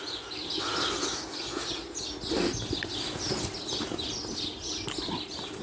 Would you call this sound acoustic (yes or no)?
yes